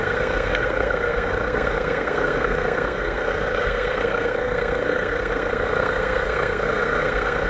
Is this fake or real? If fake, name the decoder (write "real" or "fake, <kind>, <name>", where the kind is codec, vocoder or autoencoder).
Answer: fake, codec, SNAC